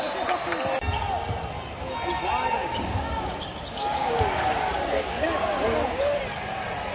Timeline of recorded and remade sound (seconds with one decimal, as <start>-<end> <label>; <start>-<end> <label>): 0.0-2.6 recorded; 2.6-6.2 remade; 6.2-6.9 recorded